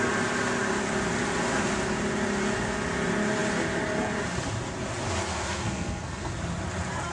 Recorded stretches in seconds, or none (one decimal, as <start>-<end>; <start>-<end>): 0.0-5.3; 6.3-7.1